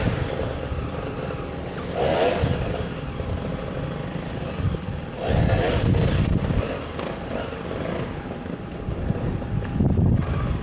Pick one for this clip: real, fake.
real